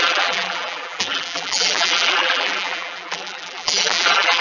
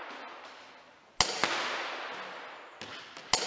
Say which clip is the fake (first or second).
first